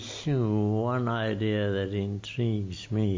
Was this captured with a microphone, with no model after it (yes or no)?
yes